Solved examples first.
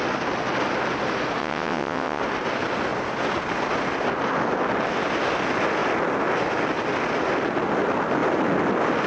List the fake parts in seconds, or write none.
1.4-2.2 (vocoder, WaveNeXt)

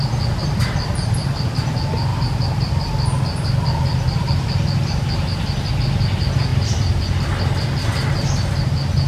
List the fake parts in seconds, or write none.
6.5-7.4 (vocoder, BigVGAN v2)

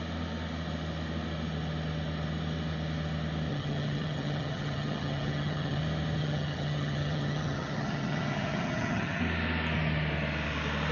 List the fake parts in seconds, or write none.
3.5-5.8 (vocoder, HiFi-GAN); 6.2-9.2

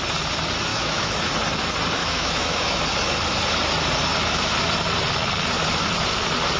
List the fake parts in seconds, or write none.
0.7-1.3 (autoencoder, DAC-VAE); 2.0-2.8

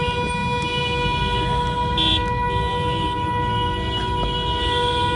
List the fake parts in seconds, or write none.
none

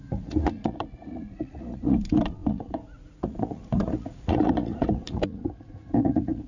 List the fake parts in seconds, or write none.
0.0-6.5 (vocoder, Vocos)

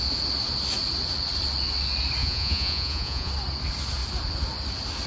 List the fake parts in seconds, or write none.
2.2-3.3 (vocoder, Vocos)